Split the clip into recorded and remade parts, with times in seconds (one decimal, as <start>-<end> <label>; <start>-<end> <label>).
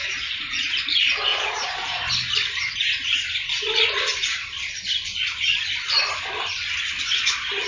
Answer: 0.0-0.7 remade; 0.7-1.3 recorded; 1.3-2.1 remade; 2.1-7.7 recorded